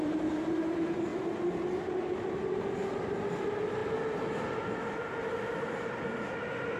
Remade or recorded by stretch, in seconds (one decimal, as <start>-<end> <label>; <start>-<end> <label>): 0.0-6.8 recorded